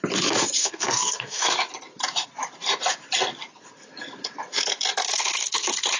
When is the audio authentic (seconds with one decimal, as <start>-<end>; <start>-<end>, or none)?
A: 0.0-0.6; 1.7-5.1